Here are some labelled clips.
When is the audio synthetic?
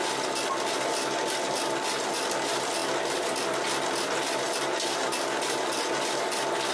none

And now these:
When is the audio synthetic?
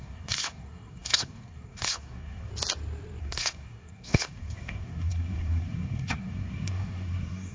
0.0-2.5 (codec, SNAC); 3.2-7.5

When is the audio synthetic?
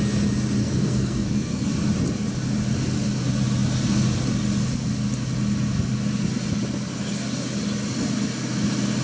0.6-1.7 (codec, SNAC)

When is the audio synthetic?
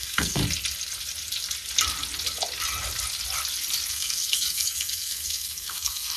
0.0-0.4 (codec, SNAC); 3.9-6.2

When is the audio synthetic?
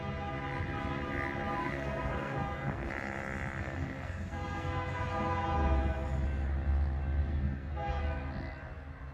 1.6-2.9 (codec, SNAC); 3.6-4.9; 7.3-8.0